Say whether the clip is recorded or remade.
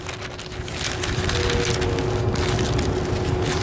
recorded